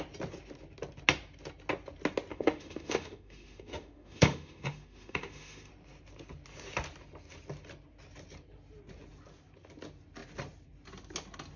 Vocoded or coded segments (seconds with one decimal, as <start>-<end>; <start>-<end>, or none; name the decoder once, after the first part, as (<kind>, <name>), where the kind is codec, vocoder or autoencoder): 2.3-5.7 (autoencoder, DAC-VAE)